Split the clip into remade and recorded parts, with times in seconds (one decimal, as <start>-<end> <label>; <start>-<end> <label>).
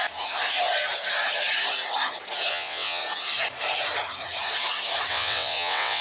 0.0-2.5 recorded; 2.5-3.0 remade; 3.0-5.1 recorded; 5.1-6.0 remade